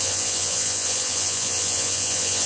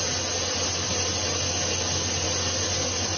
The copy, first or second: first